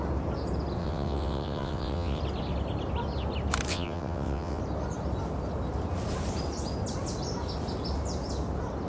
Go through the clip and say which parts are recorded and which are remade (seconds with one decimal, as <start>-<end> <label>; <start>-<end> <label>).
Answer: 0.0-0.8 recorded; 0.8-2.2 remade; 2.2-3.7 recorded; 3.7-4.6 remade; 4.6-8.9 recorded